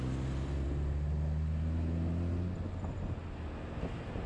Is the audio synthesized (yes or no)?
no